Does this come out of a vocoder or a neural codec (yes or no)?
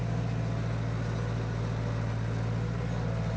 no